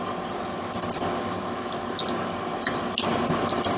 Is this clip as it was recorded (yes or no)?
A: yes